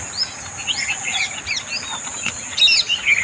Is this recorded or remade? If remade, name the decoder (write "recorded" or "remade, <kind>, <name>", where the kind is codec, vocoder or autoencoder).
recorded